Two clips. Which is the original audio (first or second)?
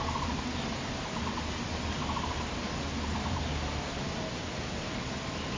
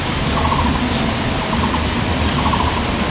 first